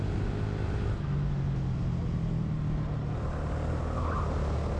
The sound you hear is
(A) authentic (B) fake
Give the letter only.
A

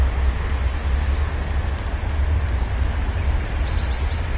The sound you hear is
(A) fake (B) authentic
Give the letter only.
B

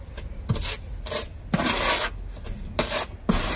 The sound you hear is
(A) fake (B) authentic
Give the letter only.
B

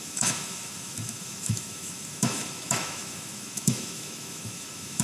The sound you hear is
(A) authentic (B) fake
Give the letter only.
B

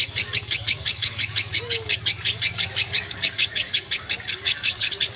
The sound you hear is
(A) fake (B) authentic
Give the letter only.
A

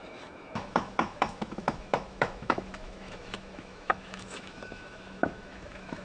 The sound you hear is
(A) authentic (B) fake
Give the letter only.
B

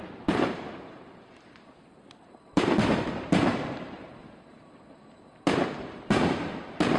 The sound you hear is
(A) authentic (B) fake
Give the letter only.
B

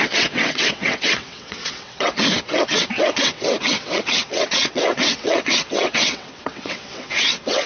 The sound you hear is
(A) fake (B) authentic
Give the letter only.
A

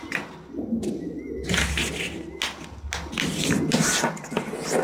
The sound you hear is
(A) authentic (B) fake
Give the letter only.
A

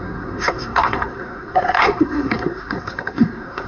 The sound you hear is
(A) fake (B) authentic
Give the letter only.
A